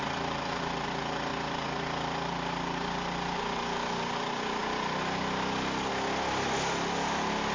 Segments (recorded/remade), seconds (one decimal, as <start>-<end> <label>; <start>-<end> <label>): 0.0-7.5 recorded